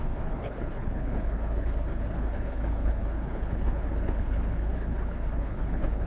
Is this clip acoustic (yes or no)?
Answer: no